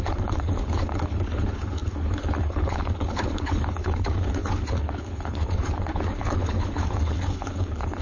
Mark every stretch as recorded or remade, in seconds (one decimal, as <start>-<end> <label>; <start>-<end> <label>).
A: 0.0-8.0 remade